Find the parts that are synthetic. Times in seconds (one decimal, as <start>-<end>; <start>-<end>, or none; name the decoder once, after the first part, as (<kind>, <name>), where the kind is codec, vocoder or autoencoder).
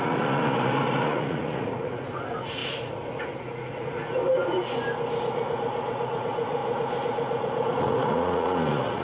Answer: 0.0-4.2 (vocoder, Vocos); 5.2-9.0